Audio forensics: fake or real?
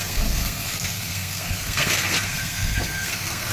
fake